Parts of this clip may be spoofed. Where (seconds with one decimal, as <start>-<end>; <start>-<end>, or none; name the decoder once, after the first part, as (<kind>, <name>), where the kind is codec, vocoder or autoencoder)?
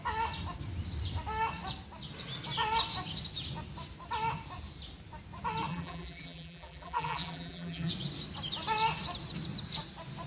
5.7-7.9 (vocoder, BigVGAN v2)